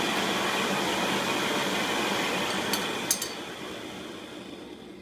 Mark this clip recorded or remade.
recorded